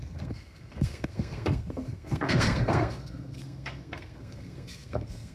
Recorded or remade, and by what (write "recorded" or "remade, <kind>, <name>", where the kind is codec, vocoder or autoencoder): remade, codec, SNAC